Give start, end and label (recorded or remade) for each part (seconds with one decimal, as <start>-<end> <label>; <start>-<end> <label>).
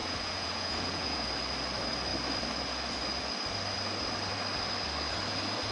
0.0-1.3 remade; 1.3-5.7 recorded